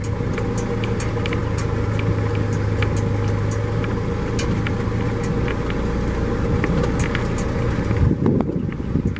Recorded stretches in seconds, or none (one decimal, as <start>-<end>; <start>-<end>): 0.0-9.2